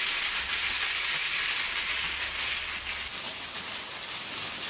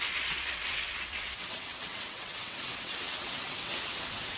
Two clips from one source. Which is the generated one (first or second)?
second